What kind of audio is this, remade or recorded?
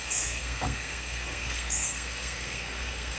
remade